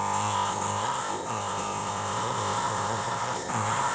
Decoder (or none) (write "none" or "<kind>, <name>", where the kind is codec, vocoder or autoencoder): codec, ZipCodec